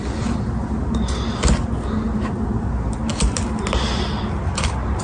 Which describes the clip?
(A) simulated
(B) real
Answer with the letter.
B